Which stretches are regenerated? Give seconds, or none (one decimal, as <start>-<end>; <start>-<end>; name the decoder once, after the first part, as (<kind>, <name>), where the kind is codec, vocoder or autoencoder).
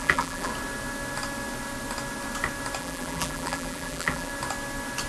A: 0.0-0.5 (vocoder, BigVGAN v2); 2.8-4.3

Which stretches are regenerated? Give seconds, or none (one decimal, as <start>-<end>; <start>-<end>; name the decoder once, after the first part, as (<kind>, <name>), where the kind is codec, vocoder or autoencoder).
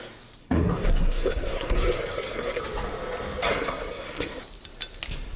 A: 0.4-2.6 (codec, SNAC); 3.5-4.4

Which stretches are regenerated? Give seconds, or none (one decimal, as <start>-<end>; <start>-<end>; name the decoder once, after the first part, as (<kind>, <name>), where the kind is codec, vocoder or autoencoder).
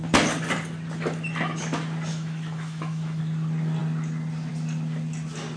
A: 2.1-3.2 (autoencoder, DAC-VAE)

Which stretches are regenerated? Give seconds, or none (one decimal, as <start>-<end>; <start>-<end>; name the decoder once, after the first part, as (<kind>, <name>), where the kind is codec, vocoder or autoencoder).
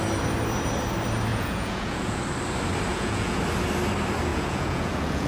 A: 1.3-2.2 (vocoder, Vocos); 2.9-3.4; 4.3-5.3